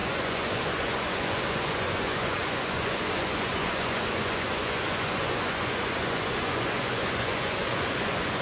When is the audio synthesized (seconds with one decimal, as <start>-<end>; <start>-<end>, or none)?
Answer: 0.0-8.4